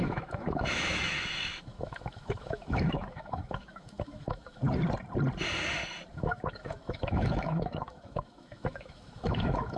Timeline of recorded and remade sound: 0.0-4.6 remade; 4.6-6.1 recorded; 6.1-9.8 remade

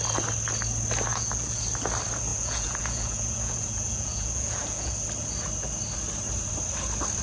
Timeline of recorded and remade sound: 0.0-1.1 recorded; 1.1-1.6 remade; 1.6-2.3 recorded; 2.3-4.9 remade; 4.9-7.2 recorded

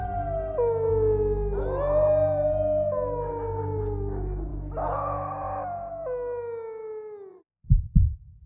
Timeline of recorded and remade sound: 0.0-7.3 recorded; 7.3-7.8 remade; 7.8-8.5 recorded